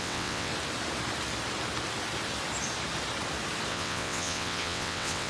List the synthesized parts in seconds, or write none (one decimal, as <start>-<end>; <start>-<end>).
0.0-0.5; 3.7-5.3